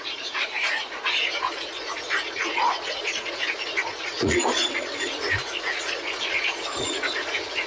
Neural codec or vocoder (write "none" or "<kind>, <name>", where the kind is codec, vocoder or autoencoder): vocoder, Vocos